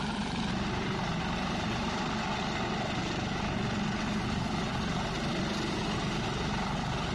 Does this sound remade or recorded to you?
recorded